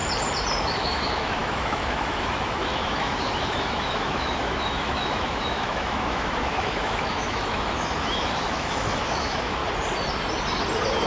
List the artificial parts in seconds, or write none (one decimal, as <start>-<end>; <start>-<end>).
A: 0.6-9.6